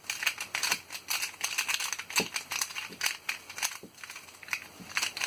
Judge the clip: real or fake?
real